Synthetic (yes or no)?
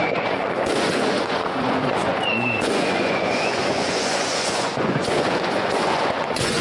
yes